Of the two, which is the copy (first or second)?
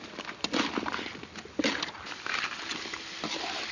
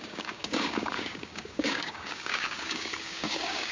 second